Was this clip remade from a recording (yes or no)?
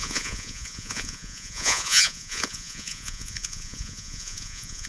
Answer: yes